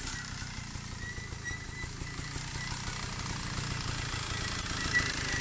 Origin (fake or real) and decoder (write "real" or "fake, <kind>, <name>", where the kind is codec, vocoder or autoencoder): real